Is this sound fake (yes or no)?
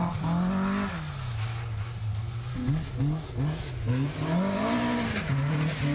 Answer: no